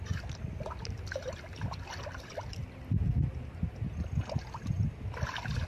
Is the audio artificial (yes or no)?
no